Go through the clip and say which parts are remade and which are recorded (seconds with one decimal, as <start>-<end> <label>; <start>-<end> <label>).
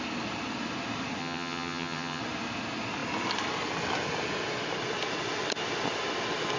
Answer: 0.0-1.2 recorded; 1.2-2.2 remade; 2.2-6.6 recorded